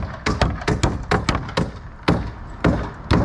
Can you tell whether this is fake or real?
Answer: real